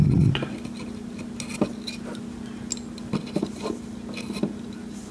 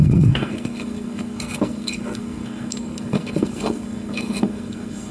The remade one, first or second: second